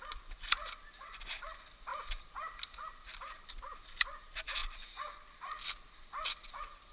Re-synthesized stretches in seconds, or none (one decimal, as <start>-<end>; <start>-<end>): none